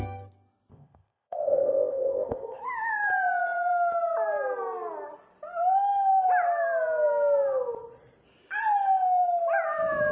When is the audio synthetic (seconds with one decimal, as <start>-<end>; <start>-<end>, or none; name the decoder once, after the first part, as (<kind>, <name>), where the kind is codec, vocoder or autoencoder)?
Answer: 0.7-2.6 (codec, ZipCodec)